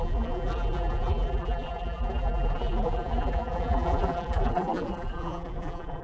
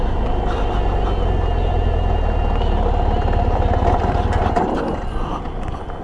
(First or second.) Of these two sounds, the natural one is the second